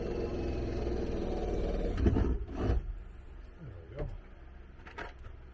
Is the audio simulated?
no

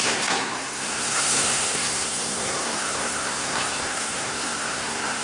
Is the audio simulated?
yes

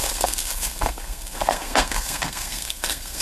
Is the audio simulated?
yes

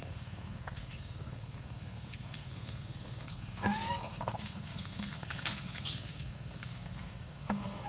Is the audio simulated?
yes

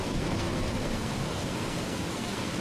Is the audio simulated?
yes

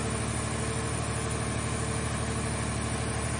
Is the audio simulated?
no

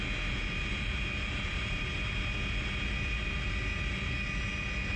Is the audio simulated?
no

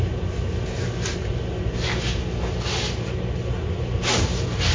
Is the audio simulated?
no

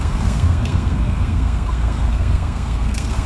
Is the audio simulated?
yes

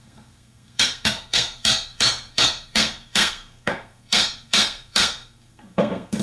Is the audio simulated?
yes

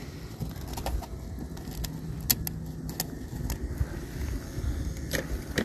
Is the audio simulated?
no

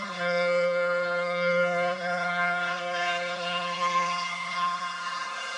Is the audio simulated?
yes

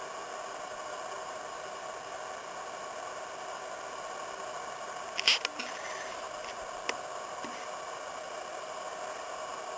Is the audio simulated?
no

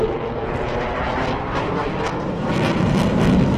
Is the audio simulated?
no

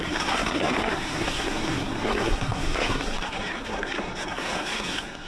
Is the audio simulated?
yes